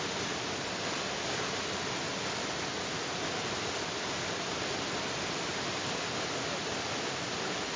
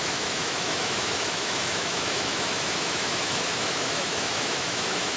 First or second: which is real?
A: first